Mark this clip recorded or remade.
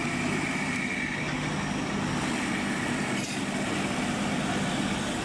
recorded